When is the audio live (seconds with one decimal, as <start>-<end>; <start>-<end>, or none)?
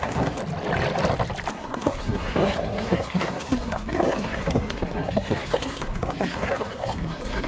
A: 0.4-1.5